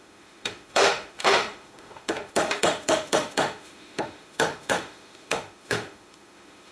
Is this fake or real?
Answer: fake